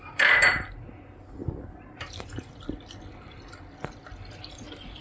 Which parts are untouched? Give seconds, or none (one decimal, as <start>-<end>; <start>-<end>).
0.0-5.0